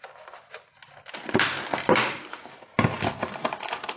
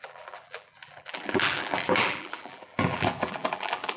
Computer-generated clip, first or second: second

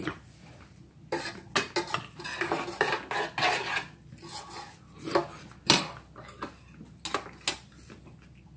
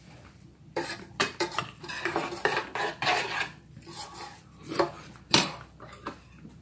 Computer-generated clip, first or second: second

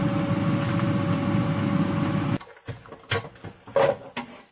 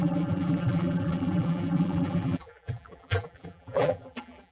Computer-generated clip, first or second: second